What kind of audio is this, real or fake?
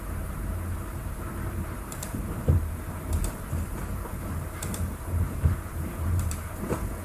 fake